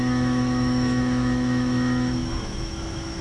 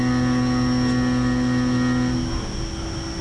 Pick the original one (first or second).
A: second